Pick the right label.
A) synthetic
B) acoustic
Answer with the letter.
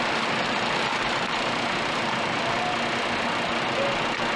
B